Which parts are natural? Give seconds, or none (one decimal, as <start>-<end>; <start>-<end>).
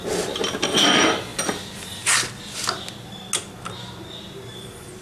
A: 0.0-5.0